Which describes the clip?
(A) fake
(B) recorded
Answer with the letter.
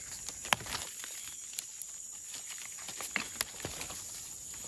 B